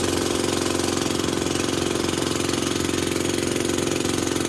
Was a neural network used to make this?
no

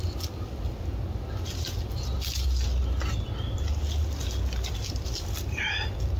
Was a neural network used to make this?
no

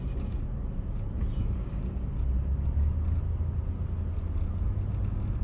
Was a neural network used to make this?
no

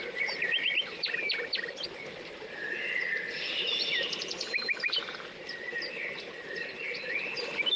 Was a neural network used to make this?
no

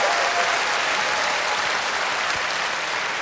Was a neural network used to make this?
no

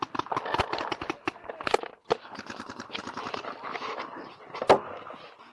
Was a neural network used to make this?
no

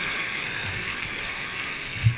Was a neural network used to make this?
yes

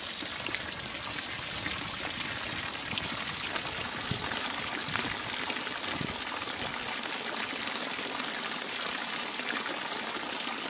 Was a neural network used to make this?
no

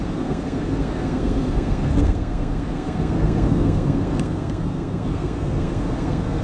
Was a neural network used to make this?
yes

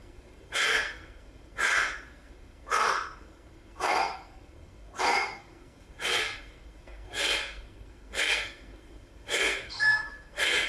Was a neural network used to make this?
yes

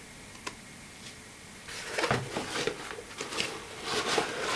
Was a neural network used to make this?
no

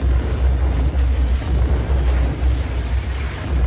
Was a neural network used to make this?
no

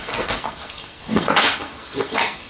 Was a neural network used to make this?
yes